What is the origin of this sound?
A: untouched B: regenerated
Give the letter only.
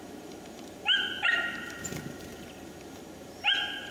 B